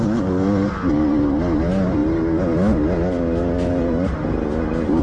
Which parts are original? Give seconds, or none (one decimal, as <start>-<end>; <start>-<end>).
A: 0.0-5.0

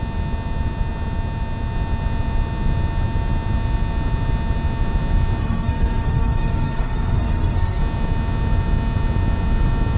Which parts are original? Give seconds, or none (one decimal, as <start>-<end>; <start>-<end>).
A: 0.0-5.4; 7.8-10.0

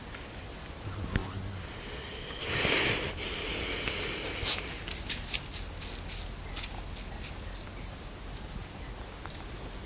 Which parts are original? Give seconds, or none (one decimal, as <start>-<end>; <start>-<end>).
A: 0.0-9.9